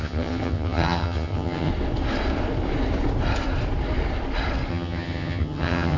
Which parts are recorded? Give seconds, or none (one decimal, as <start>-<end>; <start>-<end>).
1.7-4.7